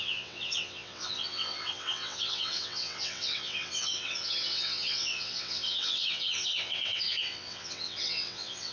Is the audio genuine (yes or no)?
no